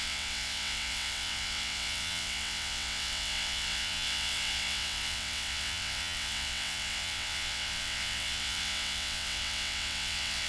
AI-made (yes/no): yes